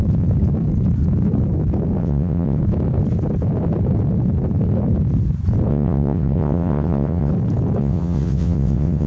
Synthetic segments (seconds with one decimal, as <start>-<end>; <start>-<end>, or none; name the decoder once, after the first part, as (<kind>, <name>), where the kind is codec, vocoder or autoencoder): 2.0-2.6 (vocoder, WaveNeXt); 5.7-7.3; 7.8-9.1